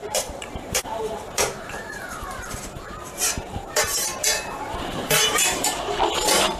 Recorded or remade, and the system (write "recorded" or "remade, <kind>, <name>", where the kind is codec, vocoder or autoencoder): remade, vocoder, BigVGAN v2